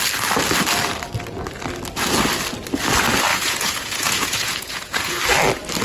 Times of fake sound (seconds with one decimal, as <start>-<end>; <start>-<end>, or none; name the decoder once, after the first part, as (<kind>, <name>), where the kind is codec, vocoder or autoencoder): 3.3-5.2 (vocoder, Vocos)